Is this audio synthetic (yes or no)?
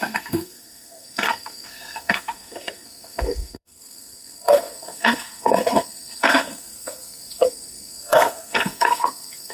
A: yes